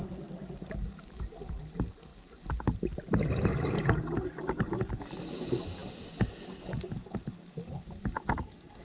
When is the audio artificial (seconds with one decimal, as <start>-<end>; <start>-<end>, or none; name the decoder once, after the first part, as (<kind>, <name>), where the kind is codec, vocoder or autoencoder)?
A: none